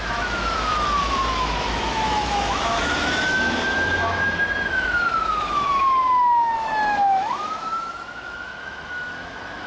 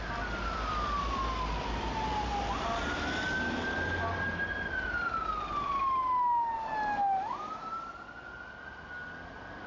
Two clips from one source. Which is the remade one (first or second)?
first